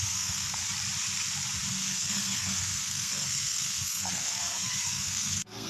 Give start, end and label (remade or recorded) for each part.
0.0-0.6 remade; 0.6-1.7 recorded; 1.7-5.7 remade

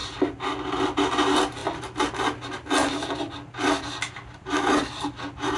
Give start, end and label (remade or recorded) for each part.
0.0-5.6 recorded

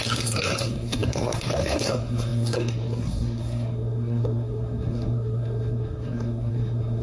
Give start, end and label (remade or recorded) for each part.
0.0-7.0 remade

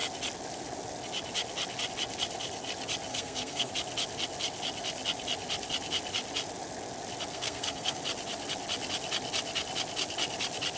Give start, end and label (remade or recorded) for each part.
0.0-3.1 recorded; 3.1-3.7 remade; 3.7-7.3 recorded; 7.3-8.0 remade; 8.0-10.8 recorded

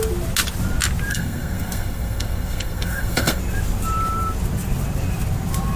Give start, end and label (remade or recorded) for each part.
0.0-1.1 recorded; 1.1-3.4 remade; 3.4-5.8 recorded

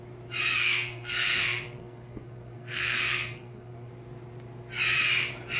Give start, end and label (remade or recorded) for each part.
0.0-0.5 recorded; 0.5-3.9 remade; 3.9-5.6 recorded